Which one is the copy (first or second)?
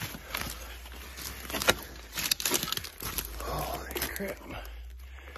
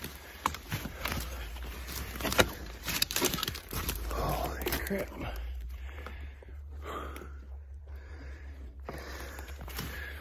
second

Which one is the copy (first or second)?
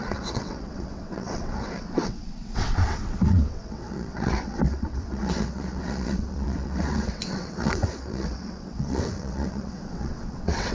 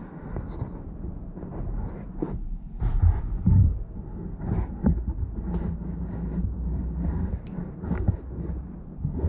first